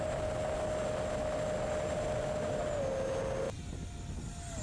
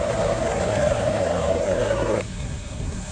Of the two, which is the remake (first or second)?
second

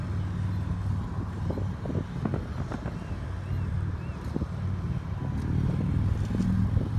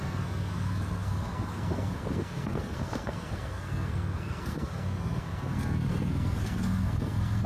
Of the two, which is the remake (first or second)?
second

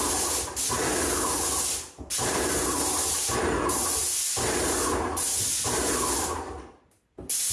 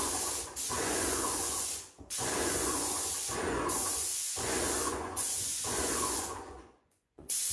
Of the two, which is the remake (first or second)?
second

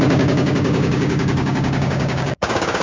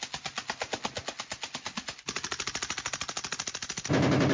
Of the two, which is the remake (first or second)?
first